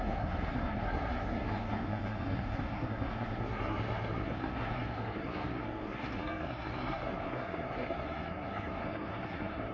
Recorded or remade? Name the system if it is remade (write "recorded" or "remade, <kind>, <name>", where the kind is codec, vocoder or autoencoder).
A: remade, codec, SNAC